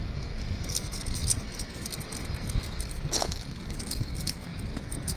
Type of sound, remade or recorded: remade